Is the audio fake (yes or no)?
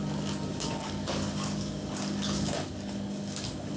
yes